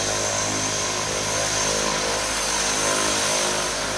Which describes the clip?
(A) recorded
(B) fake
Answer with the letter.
A